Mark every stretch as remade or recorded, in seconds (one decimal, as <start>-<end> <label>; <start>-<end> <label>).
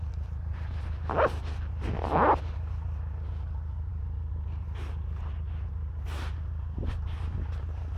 0.0-8.0 recorded